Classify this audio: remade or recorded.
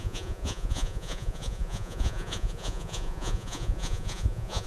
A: remade